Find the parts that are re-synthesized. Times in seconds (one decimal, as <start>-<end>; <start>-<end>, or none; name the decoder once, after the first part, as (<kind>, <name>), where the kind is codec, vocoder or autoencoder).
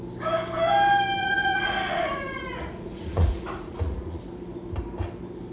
1.2-4.2 (vocoder, Vocos)